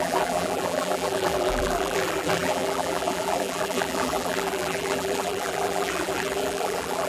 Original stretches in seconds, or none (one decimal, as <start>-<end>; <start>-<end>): none